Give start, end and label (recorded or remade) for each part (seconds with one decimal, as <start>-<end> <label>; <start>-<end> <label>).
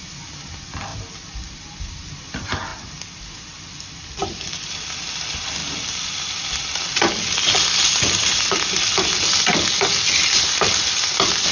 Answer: 0.0-0.9 recorded; 0.9-2.1 remade; 2.1-4.2 recorded; 4.2-4.9 remade; 4.9-11.5 recorded